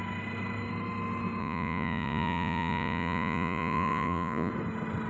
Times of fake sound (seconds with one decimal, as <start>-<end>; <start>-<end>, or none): 1.4-4.5